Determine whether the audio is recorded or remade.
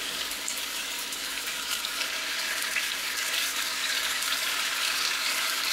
remade